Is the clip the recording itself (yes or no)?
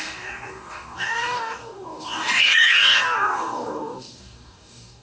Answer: no